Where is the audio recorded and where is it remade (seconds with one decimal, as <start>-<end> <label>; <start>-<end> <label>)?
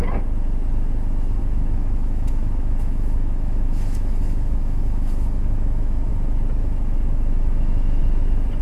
0.0-1.4 recorded; 1.4-6.1 remade; 6.1-6.6 recorded; 6.6-8.0 remade; 8.0-8.6 recorded